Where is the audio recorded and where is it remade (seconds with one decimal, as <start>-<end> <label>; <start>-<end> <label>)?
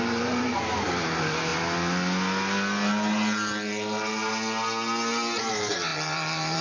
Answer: 0.0-1.5 remade; 1.5-5.5 recorded; 5.5-6.6 remade